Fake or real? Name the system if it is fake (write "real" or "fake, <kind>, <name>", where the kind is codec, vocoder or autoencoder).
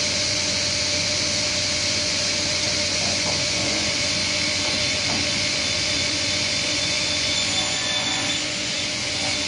fake, vocoder, Vocos